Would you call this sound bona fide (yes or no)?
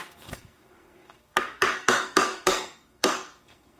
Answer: no